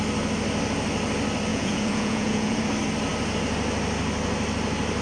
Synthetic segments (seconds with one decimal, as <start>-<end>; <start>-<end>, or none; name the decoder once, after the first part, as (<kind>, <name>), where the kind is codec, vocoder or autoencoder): 1.5-2.6 (vocoder, Vocos)